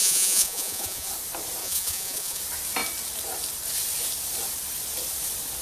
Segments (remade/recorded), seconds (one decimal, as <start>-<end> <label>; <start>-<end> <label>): 0.0-1.1 remade; 1.1-1.6 recorded; 1.6-2.4 remade; 2.4-5.6 recorded

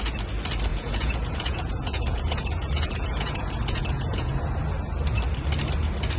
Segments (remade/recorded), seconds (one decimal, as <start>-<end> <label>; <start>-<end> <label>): 0.0-0.7 recorded; 0.7-4.4 remade; 4.4-6.2 recorded